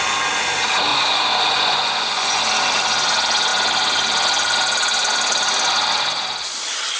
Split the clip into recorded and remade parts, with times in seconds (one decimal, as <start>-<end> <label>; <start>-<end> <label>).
0.0-0.9 recorded; 0.9-2.4 remade; 2.4-7.0 recorded